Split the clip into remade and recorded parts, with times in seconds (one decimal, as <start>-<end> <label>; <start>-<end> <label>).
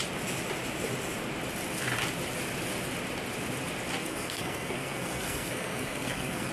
0.0-4.0 recorded; 4.0-6.5 remade